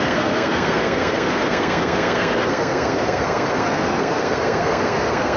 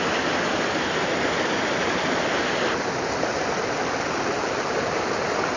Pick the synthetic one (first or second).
first